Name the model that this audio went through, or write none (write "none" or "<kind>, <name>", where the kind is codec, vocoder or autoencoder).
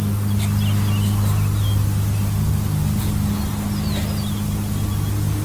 none